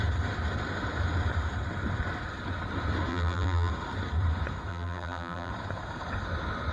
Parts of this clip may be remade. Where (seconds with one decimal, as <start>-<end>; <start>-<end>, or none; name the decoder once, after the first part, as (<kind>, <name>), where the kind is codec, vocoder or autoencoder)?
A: 3.1-3.7 (vocoder, BigVGAN v2); 4.7-5.5